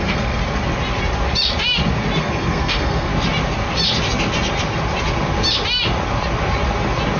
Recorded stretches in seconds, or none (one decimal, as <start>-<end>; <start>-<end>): 0.4-2.2; 3.1-7.2